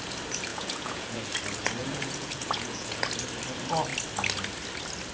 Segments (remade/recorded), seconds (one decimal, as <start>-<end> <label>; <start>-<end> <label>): 0.0-0.5 recorded; 0.5-1.2 remade; 1.2-1.8 recorded; 1.8-3.0 remade; 3.0-5.1 recorded